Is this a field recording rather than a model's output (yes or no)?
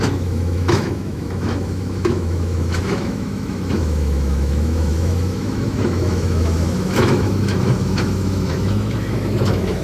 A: no